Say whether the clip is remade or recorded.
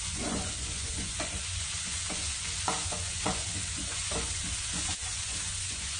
remade